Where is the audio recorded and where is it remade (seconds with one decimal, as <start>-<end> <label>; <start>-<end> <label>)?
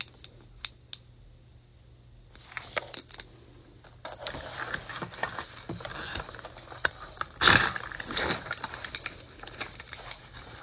0.0-10.6 recorded